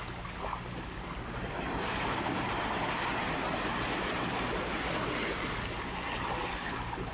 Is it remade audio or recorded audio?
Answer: recorded